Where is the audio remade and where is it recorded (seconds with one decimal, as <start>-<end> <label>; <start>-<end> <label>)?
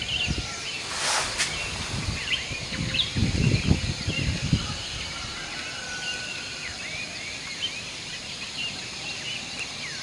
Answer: 0.0-3.2 recorded; 3.2-6.4 remade; 6.4-10.0 recorded